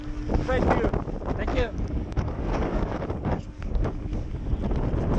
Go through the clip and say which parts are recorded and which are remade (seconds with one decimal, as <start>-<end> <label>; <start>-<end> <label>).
0.0-1.5 recorded; 1.5-4.5 remade; 4.5-5.2 recorded